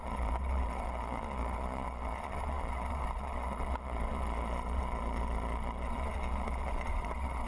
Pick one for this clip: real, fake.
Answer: fake